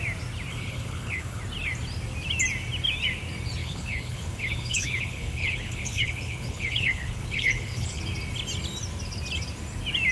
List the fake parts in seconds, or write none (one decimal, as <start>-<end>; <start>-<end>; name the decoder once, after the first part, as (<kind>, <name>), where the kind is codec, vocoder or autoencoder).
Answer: 0.5-1.4 (codec, HILCodec); 3.6-8.0